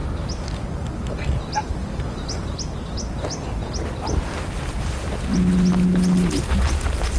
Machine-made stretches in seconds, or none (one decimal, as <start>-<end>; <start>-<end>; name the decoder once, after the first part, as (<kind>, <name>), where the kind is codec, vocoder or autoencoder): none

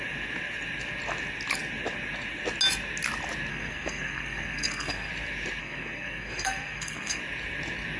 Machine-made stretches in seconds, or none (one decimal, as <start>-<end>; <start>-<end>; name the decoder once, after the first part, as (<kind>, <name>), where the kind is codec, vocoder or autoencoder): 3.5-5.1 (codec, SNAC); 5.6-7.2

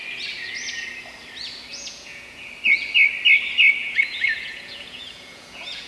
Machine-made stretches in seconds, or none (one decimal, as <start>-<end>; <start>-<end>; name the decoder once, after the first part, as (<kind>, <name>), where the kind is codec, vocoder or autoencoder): 1.7-2.5 (vocoder, Vocos); 3.8-5.9

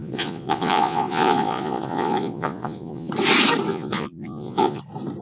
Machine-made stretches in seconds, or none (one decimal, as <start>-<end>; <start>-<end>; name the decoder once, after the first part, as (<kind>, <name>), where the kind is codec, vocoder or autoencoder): 0.0-3.1 (vocoder, Vocos); 3.7-4.8

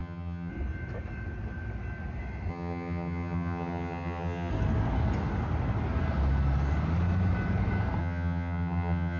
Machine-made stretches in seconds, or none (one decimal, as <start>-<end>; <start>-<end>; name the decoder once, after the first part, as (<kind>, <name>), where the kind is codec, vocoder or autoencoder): 0.0-0.5 (vocoder, HiFi-GAN); 2.5-4.5; 8.0-9.2

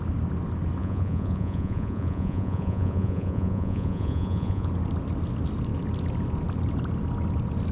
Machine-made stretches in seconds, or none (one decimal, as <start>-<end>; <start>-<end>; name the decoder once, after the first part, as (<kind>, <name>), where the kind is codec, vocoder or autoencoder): 0.8-4.7 (vocoder, Vocos)